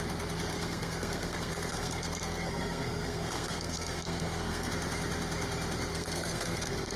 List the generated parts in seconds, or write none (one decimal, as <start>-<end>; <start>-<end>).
0.5-4.7; 5.9-7.0